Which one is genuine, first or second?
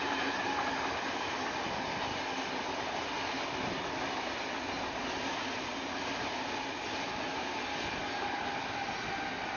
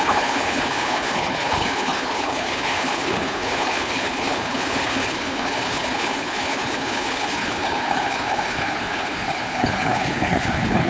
first